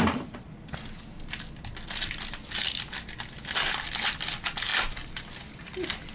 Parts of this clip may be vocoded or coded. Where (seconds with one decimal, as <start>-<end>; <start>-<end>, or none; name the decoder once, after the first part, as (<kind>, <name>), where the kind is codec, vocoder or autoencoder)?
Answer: none

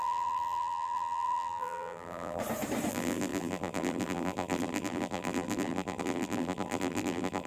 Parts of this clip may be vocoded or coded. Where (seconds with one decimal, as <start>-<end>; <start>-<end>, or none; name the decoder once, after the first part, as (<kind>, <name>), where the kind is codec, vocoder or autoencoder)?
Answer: 0.0-2.4 (vocoder, BigVGAN v2); 2.9-7.5